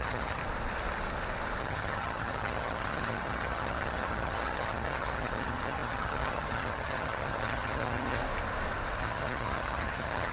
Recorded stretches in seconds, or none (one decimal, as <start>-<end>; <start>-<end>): 0.4-1.6; 8.2-9.0